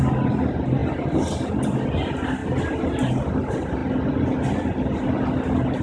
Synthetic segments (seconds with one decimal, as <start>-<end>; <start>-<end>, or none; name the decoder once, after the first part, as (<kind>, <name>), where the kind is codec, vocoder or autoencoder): none